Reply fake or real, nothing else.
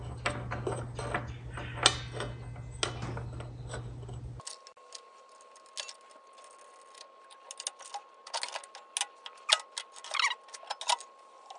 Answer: real